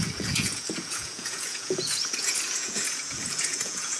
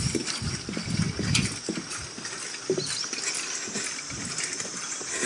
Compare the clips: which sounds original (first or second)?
second